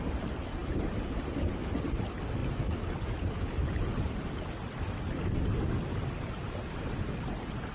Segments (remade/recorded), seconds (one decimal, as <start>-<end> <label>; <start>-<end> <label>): 0.0-0.6 recorded; 0.6-1.5 remade; 1.5-7.7 recorded